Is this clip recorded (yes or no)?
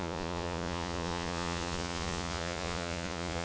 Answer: no